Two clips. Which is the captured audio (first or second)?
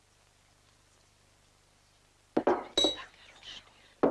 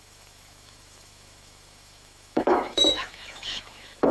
first